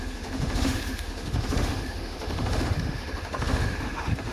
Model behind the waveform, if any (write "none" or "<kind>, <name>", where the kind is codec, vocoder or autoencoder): autoencoder, DAC-VAE